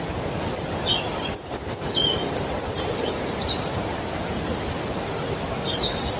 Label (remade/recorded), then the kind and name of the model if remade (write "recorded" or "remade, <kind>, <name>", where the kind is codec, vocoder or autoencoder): recorded